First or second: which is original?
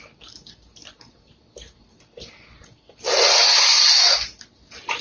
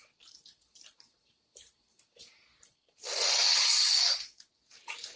first